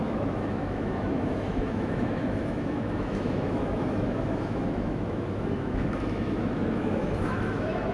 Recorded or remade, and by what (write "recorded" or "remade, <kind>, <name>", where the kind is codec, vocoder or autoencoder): remade, autoencoder, DAC-VAE